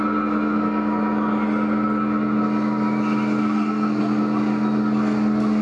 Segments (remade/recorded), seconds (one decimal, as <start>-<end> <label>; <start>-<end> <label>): 0.0-3.4 recorded; 3.4-4.0 remade; 4.0-5.6 recorded